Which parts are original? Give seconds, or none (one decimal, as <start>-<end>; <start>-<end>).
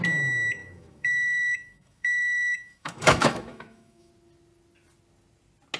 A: 0.0-0.6; 4.1-5.8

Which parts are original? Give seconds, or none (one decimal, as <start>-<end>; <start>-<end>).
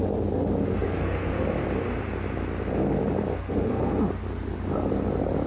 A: 0.0-0.7; 1.4-3.3; 4.0-5.5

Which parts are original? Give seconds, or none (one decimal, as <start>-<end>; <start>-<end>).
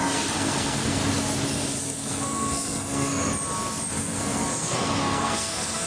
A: 1.0-1.8; 3.3-3.9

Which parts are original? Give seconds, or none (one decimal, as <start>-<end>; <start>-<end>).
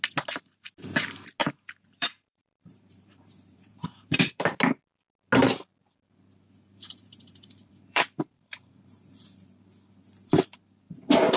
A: 0.0-1.4; 4.6-6.7; 9.5-11.4